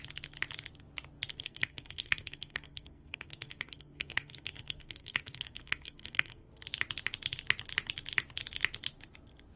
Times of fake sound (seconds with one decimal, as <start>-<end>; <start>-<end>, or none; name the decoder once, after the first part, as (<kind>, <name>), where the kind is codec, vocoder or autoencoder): 1.3-6.5 (codec, SNAC)